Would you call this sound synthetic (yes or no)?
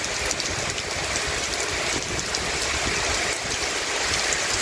no